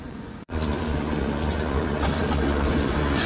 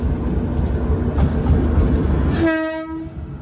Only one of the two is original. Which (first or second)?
second